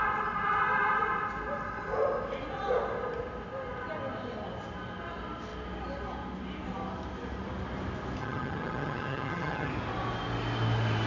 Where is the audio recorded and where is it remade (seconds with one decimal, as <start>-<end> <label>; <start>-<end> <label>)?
0.0-8.2 recorded; 8.2-9.7 remade; 9.7-11.1 recorded

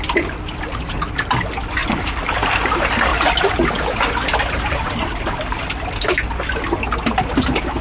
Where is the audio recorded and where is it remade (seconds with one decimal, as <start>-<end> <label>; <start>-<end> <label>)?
0.0-7.8 recorded

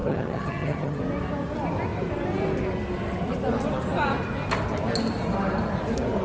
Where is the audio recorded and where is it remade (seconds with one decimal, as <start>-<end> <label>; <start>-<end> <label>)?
0.0-1.0 remade; 1.0-6.2 recorded

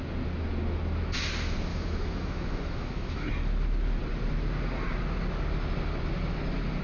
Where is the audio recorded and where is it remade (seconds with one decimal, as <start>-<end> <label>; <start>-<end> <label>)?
0.0-1.7 recorded; 1.7-3.3 remade; 3.3-6.8 recorded

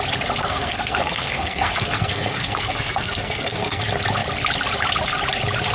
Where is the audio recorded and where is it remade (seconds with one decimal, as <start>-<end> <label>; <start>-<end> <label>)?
0.0-0.4 recorded; 0.4-3.8 remade; 3.8-5.7 recorded

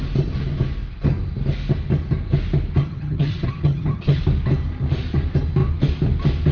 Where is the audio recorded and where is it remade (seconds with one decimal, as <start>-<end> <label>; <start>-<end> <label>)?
0.0-2.8 recorded; 2.8-4.2 remade; 4.2-6.5 recorded